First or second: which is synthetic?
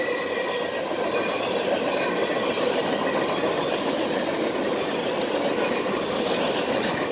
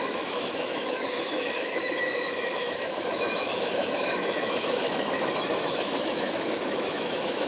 second